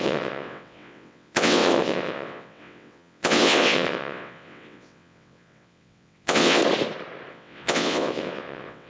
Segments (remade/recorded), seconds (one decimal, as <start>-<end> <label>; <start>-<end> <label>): 0.0-6.6 remade; 6.6-7.3 recorded; 7.3-8.9 remade